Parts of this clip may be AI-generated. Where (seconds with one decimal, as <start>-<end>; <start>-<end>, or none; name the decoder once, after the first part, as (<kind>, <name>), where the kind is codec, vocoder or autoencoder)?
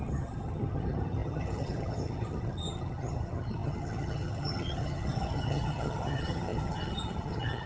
0.0-7.7 (vocoder, HiFi-GAN)